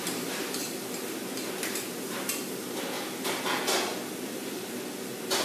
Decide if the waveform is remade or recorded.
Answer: recorded